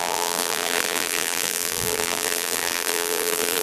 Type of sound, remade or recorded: remade